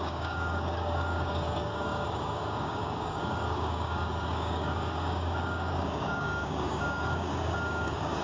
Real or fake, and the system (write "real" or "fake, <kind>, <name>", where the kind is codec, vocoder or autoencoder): fake, codec, DAC